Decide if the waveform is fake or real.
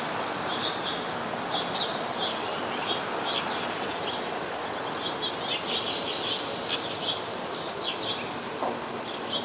real